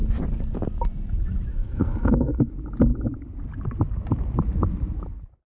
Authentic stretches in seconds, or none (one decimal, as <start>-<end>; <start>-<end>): 0.0-1.5; 2.5-5.5